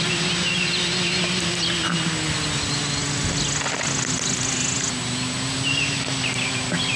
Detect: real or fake real